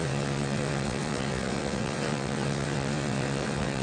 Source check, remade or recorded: remade